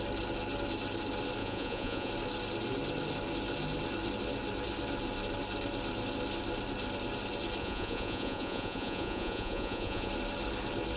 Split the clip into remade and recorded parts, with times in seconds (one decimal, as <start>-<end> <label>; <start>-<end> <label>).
0.0-1.4 recorded; 1.4-2.1 remade; 2.1-7.6 recorded; 7.6-10.1 remade; 10.1-11.0 recorded